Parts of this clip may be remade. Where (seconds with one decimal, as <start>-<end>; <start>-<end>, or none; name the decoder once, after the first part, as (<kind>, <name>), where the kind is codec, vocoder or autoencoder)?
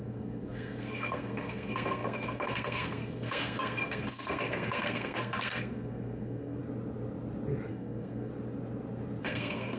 0.0-6.6 (codec, SNAC); 7.7-8.3; 9.2-9.8